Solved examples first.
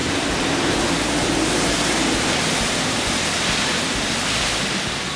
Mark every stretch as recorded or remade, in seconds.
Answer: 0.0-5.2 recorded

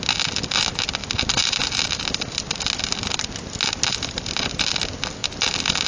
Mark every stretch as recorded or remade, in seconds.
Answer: 0.0-1.0 recorded; 1.0-2.5 remade; 2.5-5.2 recorded; 5.2-5.9 remade

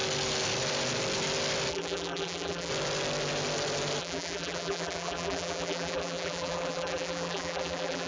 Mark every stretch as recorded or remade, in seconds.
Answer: 0.0-1.7 recorded; 1.7-2.7 remade; 2.7-4.0 recorded; 4.0-8.1 remade

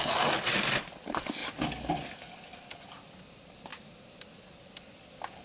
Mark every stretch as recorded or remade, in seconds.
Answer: 0.0-5.4 recorded